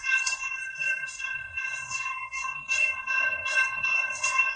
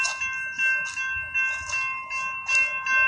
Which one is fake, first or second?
first